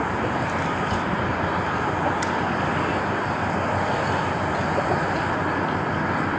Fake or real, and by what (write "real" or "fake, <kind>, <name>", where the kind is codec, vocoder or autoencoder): real